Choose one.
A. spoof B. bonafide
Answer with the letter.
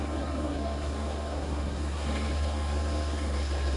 A